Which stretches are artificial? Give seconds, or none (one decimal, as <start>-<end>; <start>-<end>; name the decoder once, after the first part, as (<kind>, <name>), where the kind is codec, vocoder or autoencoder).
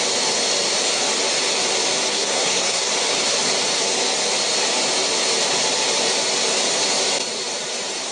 2.1-2.9 (codec, SNAC)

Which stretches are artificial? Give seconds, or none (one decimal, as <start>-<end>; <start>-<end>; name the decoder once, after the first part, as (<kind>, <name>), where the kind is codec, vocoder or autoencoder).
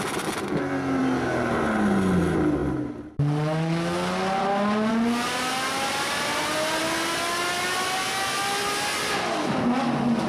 none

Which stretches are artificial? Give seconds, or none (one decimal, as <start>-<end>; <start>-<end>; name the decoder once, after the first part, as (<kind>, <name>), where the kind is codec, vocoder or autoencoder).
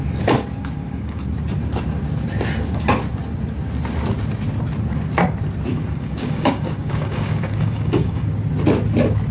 0.6-1.2 (codec, DAC); 5.7-8.3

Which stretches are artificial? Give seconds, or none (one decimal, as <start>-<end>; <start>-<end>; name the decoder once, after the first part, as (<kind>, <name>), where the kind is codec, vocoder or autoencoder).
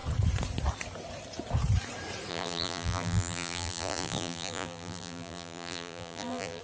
2.3-6.6 (vocoder, BigVGAN v2)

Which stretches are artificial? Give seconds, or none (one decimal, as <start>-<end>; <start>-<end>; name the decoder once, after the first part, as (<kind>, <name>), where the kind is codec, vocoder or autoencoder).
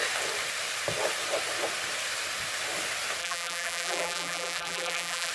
3.2-5.3 (vocoder, BigVGAN v2)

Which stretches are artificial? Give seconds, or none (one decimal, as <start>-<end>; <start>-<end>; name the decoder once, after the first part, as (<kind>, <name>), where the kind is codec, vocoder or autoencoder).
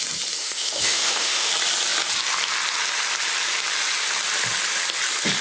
0.4-1.5 (autoencoder, DAC-VAE)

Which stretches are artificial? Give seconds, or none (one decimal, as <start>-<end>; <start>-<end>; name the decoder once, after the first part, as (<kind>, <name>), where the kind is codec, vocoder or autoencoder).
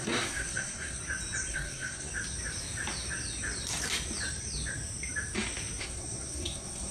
0.0-1.0 (codec, SNAC); 1.5-2.1; 5.8-6.9